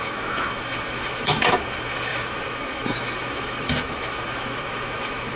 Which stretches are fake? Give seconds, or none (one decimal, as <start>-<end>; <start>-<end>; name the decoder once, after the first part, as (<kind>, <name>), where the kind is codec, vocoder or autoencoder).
0.0-5.4 (autoencoder, DAC-VAE)